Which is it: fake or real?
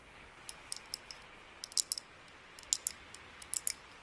real